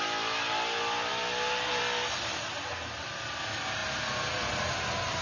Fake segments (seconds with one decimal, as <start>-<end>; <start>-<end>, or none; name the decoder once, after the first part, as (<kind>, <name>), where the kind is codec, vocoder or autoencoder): none